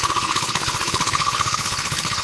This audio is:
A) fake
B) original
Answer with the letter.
A